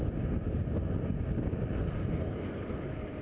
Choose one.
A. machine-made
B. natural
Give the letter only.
B